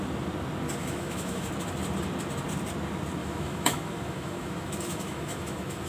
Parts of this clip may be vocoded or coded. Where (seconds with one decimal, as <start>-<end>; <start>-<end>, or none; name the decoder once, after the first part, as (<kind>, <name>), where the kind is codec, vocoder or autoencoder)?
0.8-1.5 (autoencoder, DAC-VAE); 3.2-5.9